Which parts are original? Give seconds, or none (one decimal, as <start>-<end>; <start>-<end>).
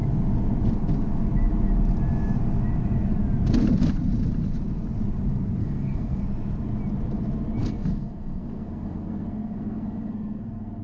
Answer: 0.0-5.6; 6.2-7.6